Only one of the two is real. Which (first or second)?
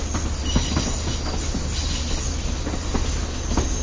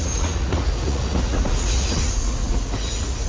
first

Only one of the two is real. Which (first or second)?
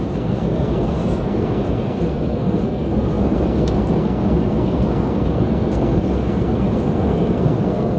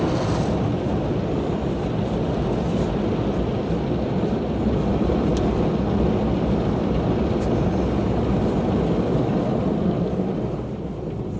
second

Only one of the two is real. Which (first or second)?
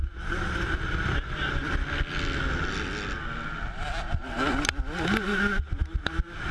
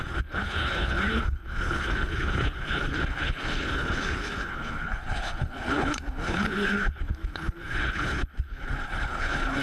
first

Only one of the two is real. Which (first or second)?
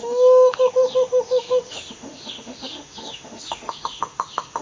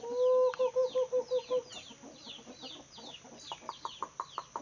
second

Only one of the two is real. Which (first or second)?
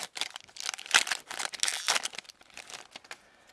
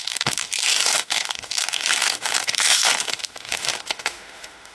first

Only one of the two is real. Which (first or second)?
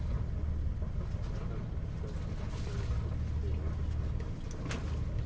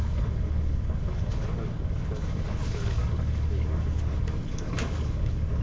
first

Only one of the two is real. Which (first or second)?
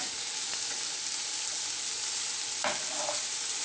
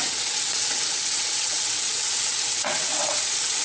first